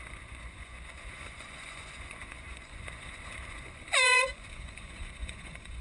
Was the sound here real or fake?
fake